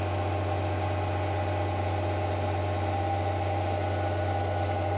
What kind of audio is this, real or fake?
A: real